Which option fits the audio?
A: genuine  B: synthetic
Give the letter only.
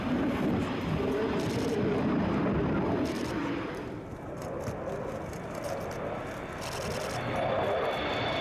A